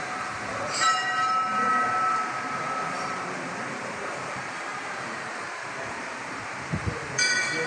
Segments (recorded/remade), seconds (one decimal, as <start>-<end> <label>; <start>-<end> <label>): 0.0-7.7 remade